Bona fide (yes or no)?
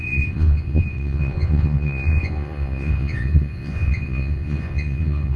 no